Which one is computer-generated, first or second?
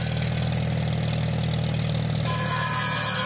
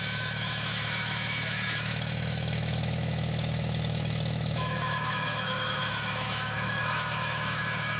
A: second